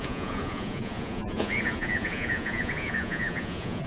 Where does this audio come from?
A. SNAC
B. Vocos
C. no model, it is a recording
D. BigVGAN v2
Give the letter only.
B